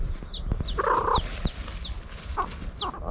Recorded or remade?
recorded